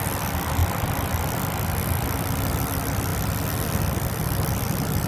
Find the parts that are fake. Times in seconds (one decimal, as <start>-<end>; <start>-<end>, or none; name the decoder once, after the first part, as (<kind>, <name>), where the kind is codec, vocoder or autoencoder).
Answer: none